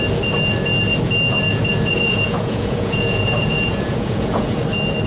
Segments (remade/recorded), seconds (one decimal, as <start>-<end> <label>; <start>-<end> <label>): 0.0-1.5 recorded; 1.5-4.6 remade; 4.6-5.1 recorded

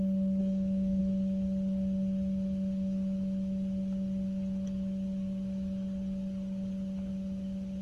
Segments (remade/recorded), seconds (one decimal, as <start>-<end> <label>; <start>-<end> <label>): 0.0-0.4 recorded; 0.4-1.0 remade; 1.0-7.8 recorded